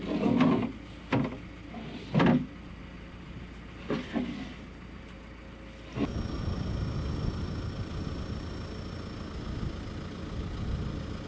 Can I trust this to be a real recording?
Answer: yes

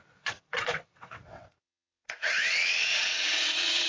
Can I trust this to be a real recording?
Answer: no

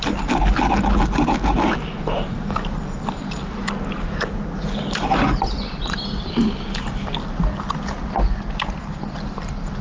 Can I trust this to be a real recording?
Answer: yes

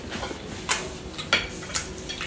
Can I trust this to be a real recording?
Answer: yes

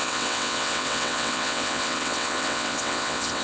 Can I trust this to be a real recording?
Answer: no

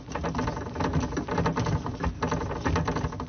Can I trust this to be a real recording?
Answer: yes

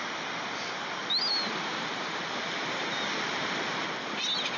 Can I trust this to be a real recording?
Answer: yes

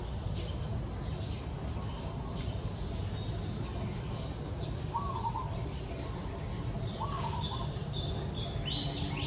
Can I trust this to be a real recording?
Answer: yes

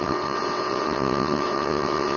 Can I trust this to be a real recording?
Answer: no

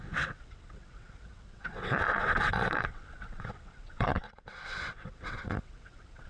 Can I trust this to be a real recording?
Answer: no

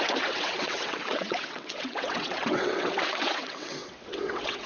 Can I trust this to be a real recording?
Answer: no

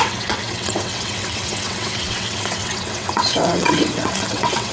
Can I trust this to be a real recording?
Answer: no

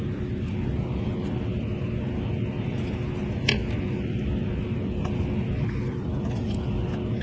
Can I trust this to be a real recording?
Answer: yes